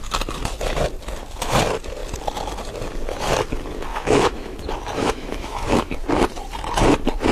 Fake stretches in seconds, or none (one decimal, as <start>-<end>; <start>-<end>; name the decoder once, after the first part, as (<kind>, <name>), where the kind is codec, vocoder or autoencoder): 3.9-4.6 (autoencoder, DAC-VAE); 5.0-5.9